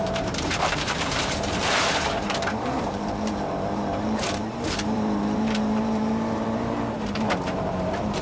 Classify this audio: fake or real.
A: fake